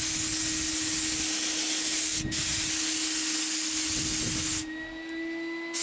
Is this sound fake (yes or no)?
no